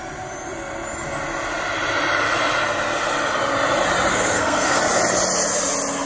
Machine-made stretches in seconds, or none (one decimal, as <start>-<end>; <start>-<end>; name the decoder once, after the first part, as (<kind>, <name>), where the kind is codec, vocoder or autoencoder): 4.1-4.8 (codec, SNAC)